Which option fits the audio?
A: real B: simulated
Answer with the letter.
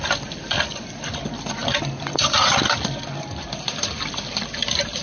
B